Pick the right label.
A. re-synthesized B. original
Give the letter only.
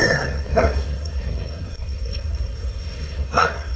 A